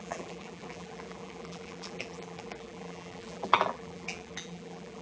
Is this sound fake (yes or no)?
yes